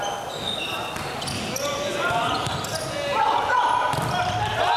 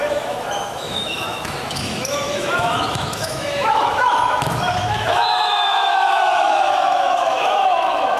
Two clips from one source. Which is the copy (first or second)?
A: second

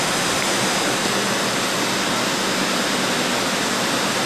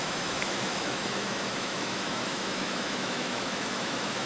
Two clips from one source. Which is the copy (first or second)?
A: second